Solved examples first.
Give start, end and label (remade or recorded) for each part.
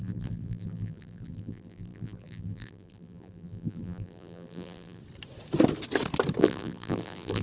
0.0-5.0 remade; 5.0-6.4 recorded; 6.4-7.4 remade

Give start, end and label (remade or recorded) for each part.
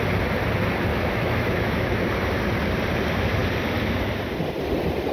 0.0-0.9 recorded; 0.9-2.1 remade; 2.1-5.1 recorded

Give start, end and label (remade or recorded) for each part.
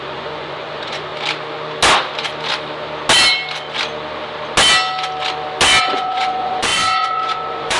0.0-1.1 remade; 1.1-5.8 recorded; 5.8-7.8 remade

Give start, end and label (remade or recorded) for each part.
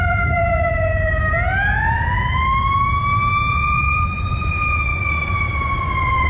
0.0-1.2 remade; 1.2-3.5 recorded; 3.5-6.3 remade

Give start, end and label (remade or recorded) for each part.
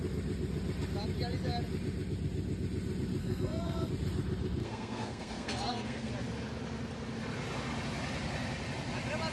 0.0-3.2 recorded; 3.2-3.9 remade; 3.9-4.6 recorded; 4.6-6.1 remade; 6.1-9.3 recorded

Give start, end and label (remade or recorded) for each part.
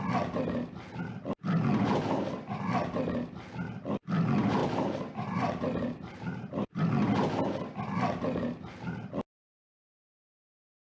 0.0-4.6 recorded; 4.6-6.8 remade; 6.8-10.8 recorded